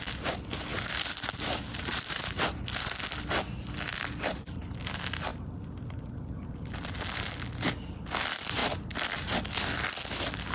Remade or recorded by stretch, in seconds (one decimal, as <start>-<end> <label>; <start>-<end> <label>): 0.0-0.7 recorded; 0.7-2.4 remade; 2.4-10.5 recorded